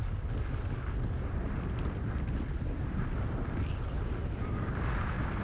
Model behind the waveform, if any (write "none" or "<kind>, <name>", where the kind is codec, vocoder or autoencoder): none